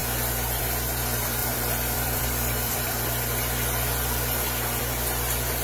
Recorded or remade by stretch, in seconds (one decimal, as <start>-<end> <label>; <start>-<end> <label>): 0.0-1.4 recorded; 1.4-4.8 remade; 4.8-5.6 recorded